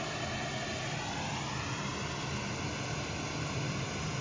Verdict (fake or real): real